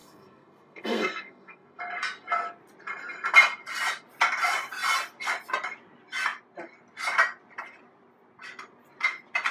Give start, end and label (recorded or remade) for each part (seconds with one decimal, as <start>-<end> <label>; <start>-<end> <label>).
0.0-1.8 remade; 1.8-9.5 recorded